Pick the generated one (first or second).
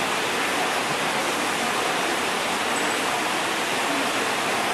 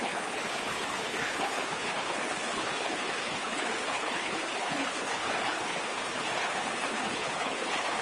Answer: second